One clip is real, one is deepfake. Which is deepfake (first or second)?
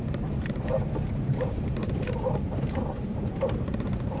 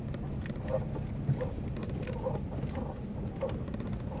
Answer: first